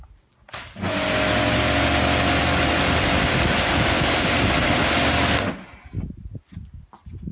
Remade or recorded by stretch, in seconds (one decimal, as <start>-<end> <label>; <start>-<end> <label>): 0.0-7.3 recorded